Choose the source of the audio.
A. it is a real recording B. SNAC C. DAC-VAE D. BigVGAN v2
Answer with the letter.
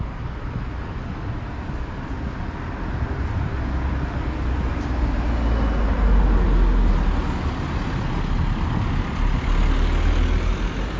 A